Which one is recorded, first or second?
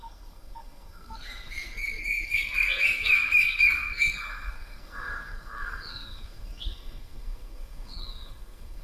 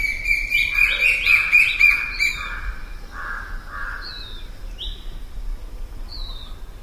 second